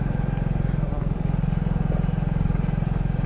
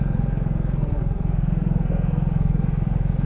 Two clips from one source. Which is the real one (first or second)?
first